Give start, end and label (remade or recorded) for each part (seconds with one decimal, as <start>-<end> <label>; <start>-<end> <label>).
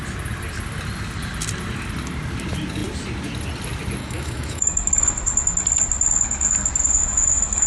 0.0-4.0 recorded; 4.0-4.9 remade; 4.9-7.0 recorded; 7.0-7.7 remade